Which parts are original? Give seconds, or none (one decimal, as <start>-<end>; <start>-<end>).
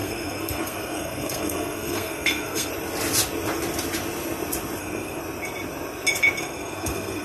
2.7-4.8; 5.2-6.4